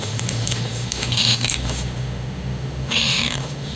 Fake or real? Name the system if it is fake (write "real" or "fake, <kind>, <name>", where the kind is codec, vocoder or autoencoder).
fake, autoencoder, DAC-VAE